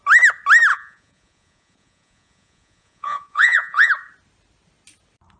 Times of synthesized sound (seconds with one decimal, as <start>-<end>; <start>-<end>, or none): 0.7-3.9